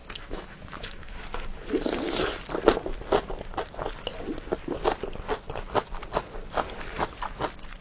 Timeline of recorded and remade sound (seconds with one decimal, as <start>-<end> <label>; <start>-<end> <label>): 0.0-1.7 remade; 1.7-7.8 recorded